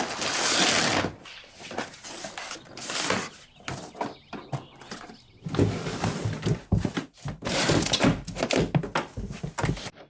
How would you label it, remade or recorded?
recorded